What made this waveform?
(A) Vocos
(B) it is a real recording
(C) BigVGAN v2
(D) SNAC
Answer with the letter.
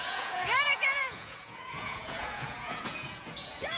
A